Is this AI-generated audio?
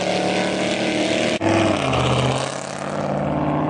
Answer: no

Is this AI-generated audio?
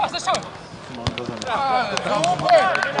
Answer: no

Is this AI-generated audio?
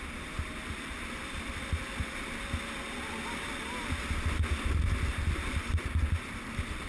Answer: no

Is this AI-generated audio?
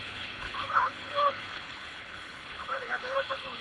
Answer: yes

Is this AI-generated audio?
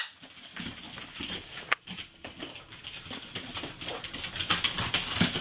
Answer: no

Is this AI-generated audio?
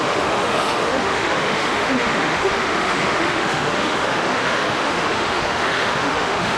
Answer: yes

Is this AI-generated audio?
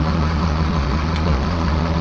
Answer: yes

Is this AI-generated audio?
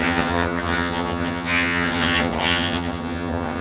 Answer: yes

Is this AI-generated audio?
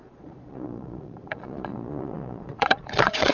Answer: yes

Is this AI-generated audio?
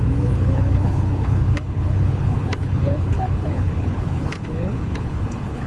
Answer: yes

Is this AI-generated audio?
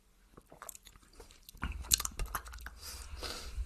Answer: no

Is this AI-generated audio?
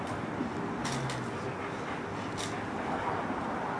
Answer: no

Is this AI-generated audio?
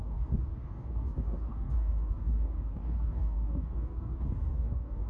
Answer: yes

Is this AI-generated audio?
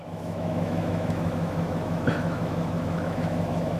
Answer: yes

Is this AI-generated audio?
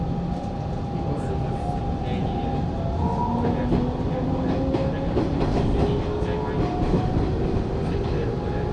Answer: no